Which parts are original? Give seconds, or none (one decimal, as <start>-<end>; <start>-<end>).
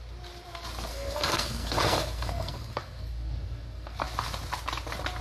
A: 0.0-0.9; 4.0-5.2